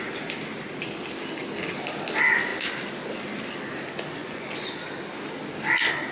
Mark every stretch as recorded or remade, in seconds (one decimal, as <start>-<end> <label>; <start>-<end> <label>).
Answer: 0.0-4.2 recorded; 4.2-4.9 remade; 4.9-6.1 recorded